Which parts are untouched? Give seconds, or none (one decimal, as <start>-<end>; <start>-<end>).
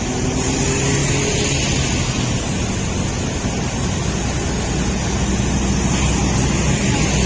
0.0-7.3